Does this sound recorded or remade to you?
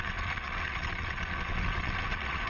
remade